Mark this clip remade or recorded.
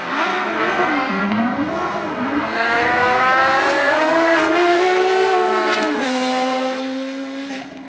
remade